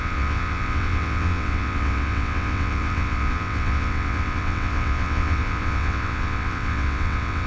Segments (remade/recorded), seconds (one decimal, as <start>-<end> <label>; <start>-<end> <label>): 0.0-7.5 remade